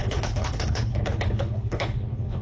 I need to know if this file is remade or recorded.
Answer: remade